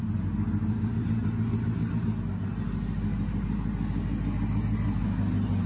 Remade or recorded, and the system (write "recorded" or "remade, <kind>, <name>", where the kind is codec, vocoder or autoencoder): recorded